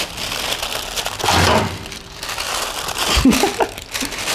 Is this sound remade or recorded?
recorded